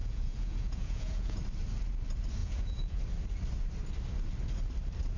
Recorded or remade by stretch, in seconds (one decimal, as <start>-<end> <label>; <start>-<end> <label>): 0.0-1.4 remade; 1.4-2.4 recorded; 2.4-3.0 remade; 3.0-5.2 recorded